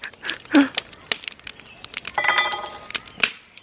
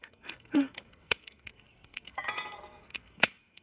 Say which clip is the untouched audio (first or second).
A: first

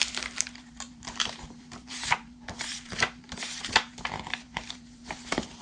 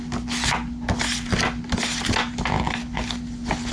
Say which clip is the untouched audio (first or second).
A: second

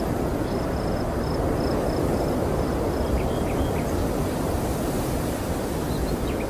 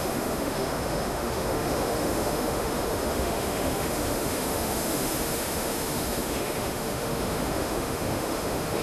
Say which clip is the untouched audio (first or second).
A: first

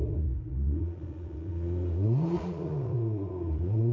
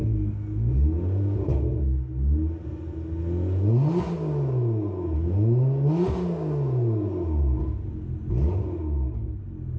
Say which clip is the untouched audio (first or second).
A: second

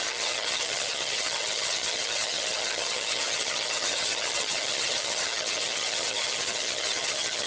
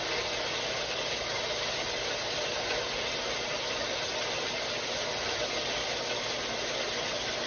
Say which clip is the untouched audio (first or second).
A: second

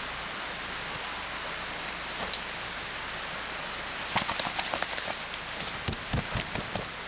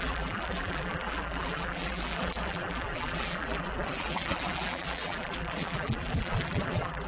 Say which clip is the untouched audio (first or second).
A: first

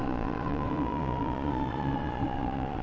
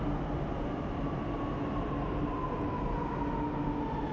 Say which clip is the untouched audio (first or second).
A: second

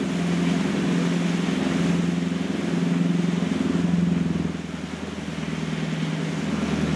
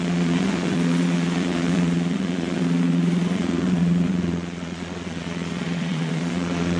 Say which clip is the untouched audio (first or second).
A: first